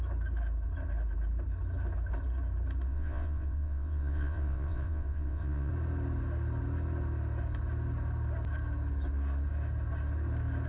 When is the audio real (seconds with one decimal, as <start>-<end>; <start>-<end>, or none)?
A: 0.0-2.9; 5.7-10.7